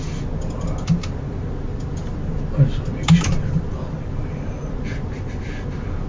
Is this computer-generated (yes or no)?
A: no